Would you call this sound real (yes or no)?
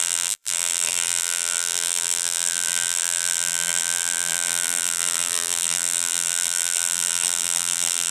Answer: no